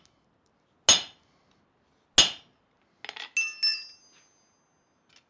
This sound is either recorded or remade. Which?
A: recorded